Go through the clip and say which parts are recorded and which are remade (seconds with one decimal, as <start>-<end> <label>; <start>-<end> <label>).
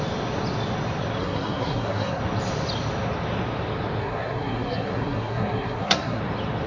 0.0-1.2 recorded; 1.2-2.2 remade; 2.2-4.0 recorded; 4.0-6.2 remade; 6.2-6.7 recorded